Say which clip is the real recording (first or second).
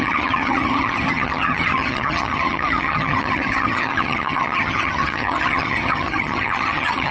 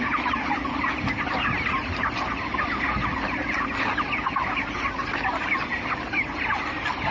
second